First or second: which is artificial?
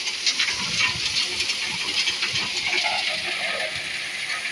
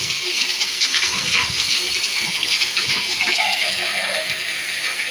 second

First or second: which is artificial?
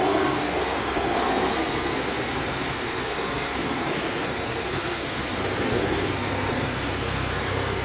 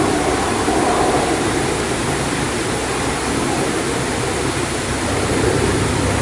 first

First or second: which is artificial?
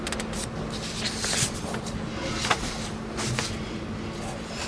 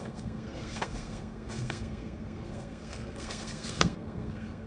second